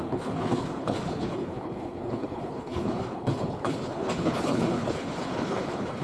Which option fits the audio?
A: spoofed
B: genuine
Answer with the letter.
A